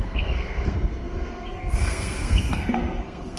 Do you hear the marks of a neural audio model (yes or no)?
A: yes